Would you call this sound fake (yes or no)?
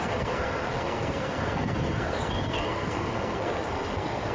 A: yes